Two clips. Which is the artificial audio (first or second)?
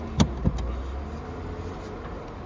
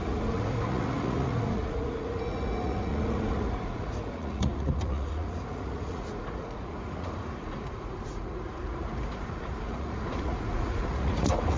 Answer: second